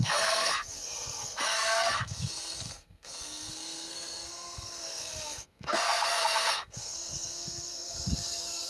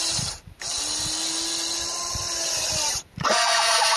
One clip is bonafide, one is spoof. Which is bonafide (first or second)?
second